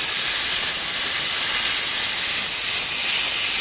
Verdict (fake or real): real